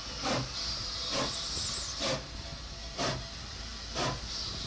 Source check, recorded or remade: recorded